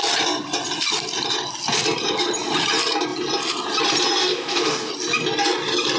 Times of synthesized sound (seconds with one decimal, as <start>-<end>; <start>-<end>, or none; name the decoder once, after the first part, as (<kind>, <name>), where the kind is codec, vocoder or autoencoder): 4.2-4.9 (codec, DAC)